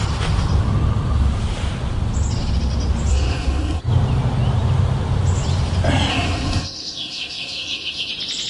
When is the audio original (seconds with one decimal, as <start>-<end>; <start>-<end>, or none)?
0.0-3.1; 3.8-6.1; 8.1-8.5